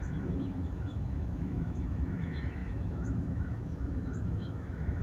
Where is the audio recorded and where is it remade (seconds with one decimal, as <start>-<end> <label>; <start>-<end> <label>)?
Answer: 0.0-5.0 remade